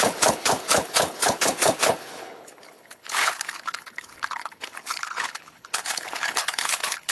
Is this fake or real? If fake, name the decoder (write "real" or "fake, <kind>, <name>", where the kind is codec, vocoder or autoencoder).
fake, codec, HILCodec